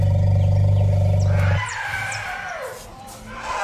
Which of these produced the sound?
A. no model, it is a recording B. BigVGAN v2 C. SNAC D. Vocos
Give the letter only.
A